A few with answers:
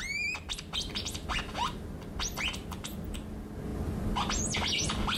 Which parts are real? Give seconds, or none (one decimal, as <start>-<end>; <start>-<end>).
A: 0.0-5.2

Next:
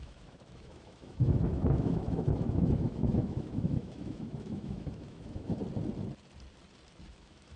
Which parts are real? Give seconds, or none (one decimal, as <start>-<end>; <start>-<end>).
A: 5.6-7.1

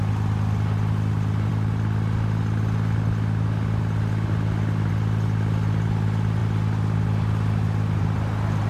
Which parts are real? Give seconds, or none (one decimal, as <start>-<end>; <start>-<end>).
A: 0.0-8.7

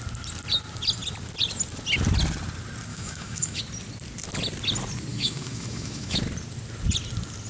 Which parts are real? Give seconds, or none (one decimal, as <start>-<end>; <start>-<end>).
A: 0.0-2.9; 3.6-5.1; 6.2-7.5

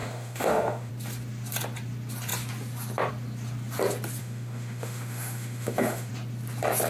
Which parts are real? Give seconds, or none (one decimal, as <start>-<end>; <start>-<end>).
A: 0.9-4.2; 6.1-6.9